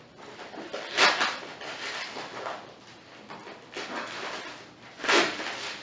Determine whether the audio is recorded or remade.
recorded